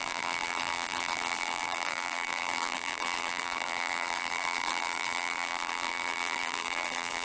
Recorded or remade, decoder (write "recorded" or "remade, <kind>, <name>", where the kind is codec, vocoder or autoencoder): remade, vocoder, BigVGAN v2